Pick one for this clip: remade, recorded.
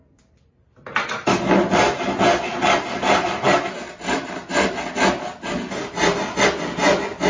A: recorded